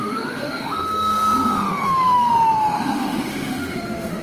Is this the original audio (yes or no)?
no